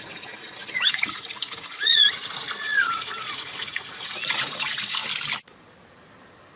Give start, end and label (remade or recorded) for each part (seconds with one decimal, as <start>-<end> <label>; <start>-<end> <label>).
0.0-5.0 remade; 5.0-6.6 recorded